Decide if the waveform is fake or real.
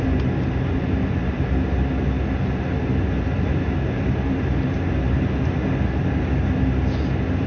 real